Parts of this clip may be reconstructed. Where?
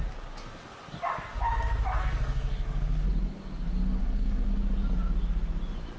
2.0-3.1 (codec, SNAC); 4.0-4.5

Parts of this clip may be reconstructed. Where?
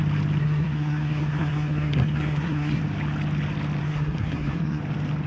0.4-2.8 (codec, SNAC); 3.8-4.8